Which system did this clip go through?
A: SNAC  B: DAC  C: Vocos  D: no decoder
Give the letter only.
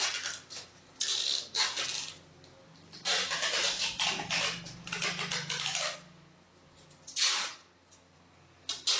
D